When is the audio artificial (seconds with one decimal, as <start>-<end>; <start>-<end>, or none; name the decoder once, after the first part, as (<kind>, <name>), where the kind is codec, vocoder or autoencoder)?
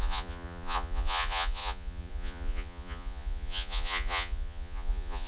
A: 0.0-5.3 (vocoder, Vocos)